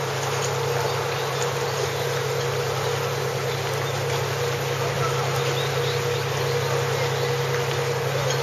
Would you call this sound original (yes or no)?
yes